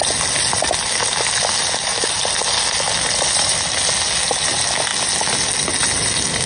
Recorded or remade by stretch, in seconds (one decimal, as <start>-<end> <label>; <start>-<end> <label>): 0.0-6.5 recorded